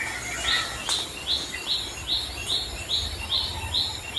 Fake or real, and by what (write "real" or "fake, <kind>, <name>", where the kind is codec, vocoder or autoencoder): real